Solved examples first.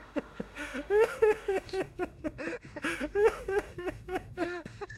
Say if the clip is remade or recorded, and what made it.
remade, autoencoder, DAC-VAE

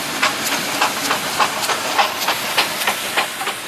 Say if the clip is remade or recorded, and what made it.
recorded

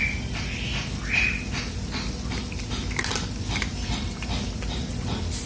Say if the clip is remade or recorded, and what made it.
recorded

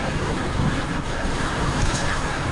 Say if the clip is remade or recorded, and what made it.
remade, codec, SNAC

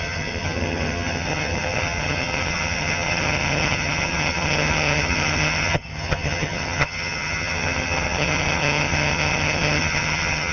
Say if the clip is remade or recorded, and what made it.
remade, vocoder, HiFi-GAN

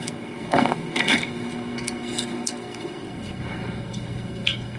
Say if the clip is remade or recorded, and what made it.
remade, codec, SNAC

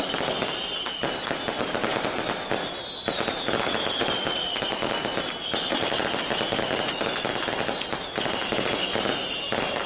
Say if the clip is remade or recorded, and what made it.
recorded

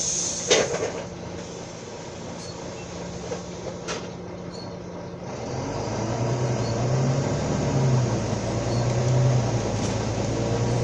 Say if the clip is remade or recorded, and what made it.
recorded